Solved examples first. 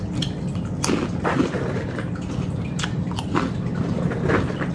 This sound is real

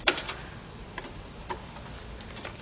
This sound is fake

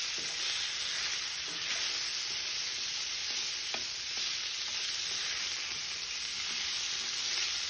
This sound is real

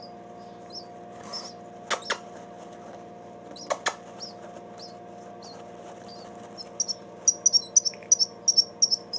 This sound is real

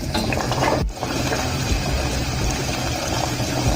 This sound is fake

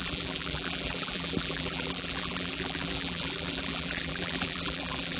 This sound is fake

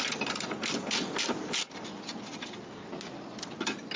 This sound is real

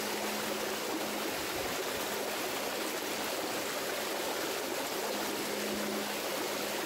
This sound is real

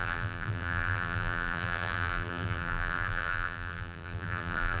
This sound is fake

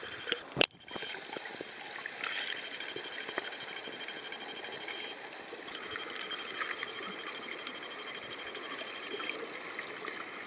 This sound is real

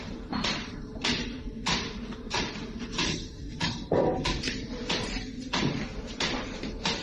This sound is fake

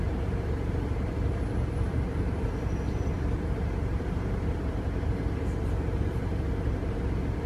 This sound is fake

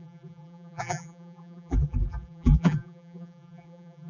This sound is fake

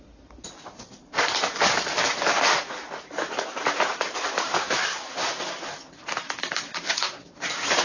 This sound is real